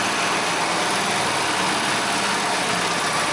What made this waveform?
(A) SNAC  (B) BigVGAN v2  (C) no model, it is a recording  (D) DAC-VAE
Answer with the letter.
C